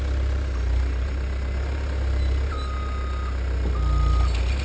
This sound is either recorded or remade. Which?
recorded